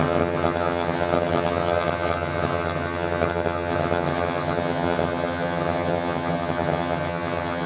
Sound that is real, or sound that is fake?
fake